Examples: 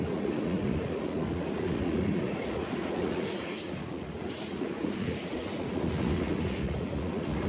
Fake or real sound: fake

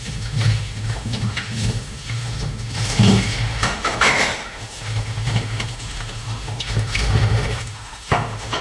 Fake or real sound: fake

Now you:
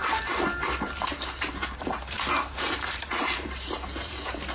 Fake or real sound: fake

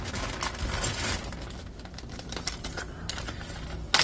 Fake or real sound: real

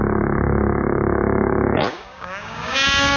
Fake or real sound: fake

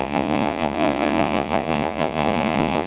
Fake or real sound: fake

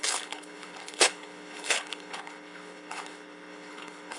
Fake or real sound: fake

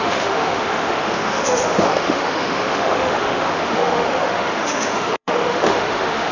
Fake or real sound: fake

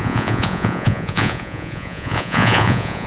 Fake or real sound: fake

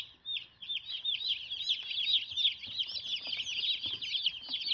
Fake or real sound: real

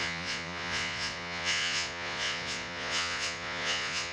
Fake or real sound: fake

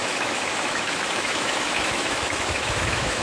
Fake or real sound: fake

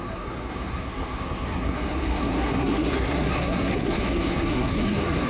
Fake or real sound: fake